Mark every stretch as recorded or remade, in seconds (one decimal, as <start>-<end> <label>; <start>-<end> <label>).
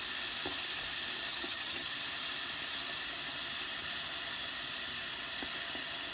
0.0-1.3 recorded; 1.3-1.9 remade; 1.9-6.1 recorded